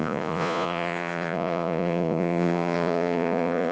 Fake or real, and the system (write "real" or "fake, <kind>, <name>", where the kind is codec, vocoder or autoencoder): fake, vocoder, Vocos